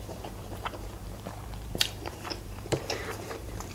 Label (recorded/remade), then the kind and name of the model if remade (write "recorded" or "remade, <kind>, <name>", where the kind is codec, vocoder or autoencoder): remade, vocoder, BigVGAN v2